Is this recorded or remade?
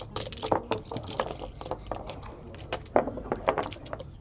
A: remade